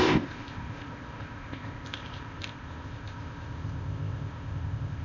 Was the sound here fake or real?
fake